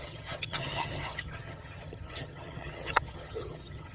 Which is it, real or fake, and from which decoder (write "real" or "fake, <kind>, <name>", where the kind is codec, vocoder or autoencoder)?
fake, vocoder, HiFi-GAN